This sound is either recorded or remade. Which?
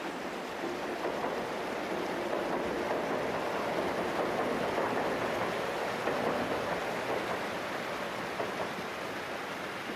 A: recorded